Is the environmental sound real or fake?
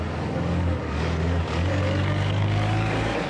fake